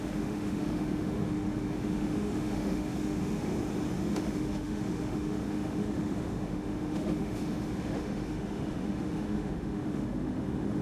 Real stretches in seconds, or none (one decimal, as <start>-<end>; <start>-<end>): 3.5-4.0